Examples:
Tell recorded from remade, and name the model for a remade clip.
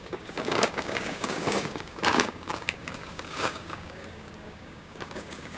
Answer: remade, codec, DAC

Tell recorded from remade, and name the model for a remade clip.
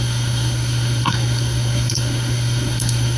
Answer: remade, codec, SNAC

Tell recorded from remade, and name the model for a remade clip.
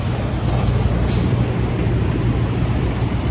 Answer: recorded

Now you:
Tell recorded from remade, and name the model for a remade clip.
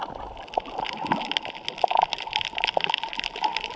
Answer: recorded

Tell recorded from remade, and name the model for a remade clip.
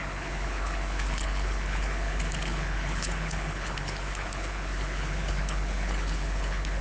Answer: remade, codec, HILCodec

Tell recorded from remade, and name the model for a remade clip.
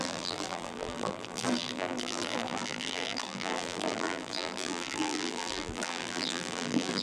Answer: remade, vocoder, BigVGAN v2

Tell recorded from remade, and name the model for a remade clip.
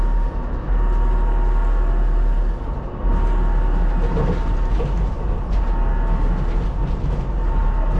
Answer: recorded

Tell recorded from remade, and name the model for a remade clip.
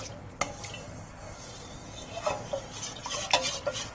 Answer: recorded